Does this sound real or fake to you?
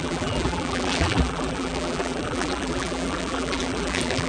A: fake